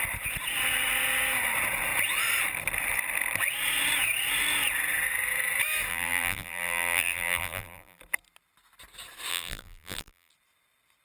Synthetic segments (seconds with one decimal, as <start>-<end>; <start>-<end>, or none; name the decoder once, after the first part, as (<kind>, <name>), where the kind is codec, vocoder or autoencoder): 5.9-8.0 (vocoder, BigVGAN v2); 9.3-10.3